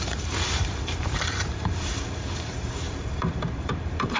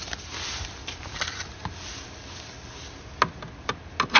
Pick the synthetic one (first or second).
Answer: first